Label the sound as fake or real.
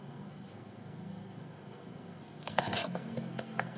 fake